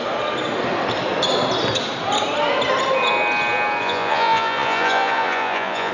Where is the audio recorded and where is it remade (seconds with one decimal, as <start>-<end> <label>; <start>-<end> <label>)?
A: 0.0-3.8 recorded; 3.8-5.9 remade